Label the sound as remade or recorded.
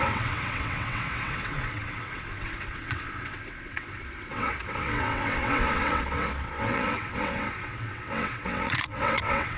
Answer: remade